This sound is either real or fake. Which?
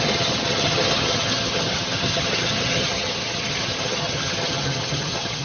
fake